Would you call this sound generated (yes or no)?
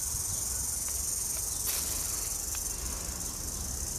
no